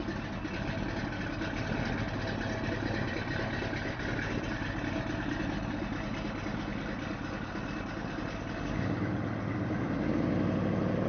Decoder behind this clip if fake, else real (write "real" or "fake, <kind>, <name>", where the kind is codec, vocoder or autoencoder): real